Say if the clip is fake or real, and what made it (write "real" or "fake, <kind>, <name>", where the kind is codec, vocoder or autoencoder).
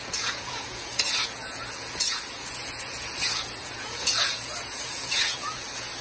fake, vocoder, Vocos